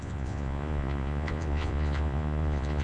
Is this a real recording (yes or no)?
no